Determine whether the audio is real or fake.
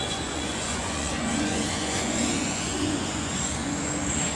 fake